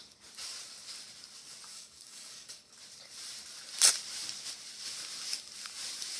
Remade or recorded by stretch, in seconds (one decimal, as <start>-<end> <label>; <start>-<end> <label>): 0.0-1.7 recorded; 1.7-2.7 remade; 2.7-6.2 recorded